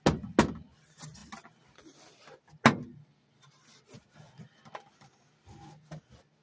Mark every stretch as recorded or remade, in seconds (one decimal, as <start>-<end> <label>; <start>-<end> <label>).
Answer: 0.0-6.4 recorded